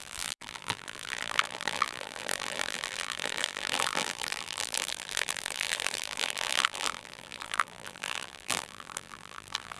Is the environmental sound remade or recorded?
remade